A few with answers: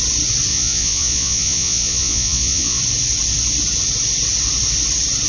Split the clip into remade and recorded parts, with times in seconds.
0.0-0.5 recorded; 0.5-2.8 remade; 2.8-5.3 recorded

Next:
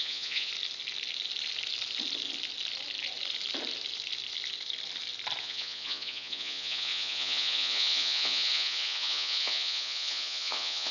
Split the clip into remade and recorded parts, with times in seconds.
0.0-0.5 remade; 0.5-5.4 recorded; 5.4-10.9 remade

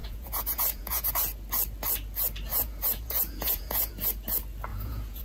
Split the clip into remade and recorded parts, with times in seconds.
0.0-1.1 remade; 1.1-2.5 recorded; 2.5-3.9 remade; 3.9-4.7 recorded; 4.7-5.2 remade